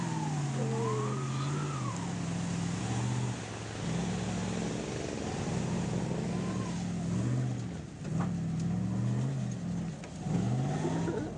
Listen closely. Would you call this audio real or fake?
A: real